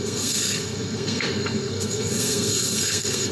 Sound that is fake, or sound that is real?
fake